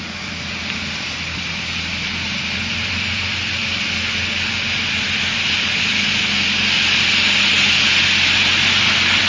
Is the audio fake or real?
real